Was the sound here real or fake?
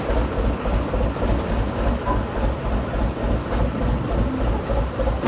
real